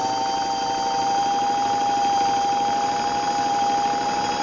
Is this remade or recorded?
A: recorded